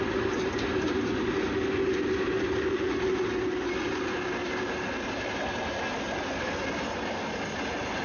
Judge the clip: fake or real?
real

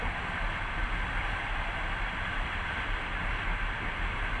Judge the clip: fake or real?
fake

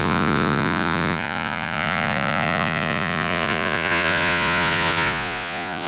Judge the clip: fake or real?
fake